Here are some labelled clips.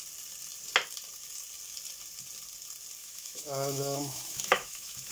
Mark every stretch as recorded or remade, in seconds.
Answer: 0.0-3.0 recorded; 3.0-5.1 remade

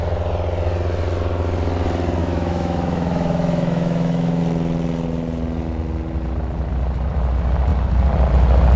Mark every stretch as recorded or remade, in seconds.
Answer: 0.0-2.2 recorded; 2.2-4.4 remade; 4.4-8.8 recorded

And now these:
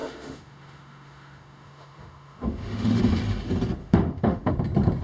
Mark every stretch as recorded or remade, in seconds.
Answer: 0.0-3.0 remade; 3.0-3.8 recorded; 3.8-4.5 remade; 4.5-5.0 recorded

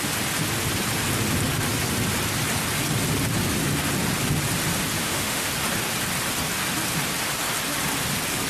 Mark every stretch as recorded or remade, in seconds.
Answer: 0.0-5.0 recorded; 5.0-5.5 remade; 5.5-8.5 recorded